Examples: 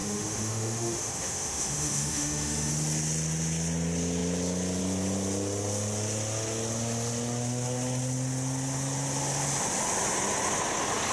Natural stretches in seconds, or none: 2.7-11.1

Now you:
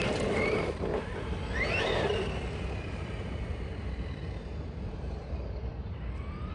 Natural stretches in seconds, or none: 0.9-1.8; 5.6-6.5

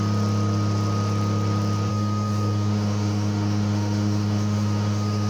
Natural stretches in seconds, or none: 0.0-1.9